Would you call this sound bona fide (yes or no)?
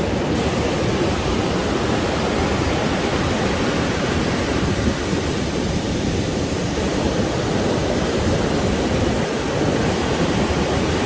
yes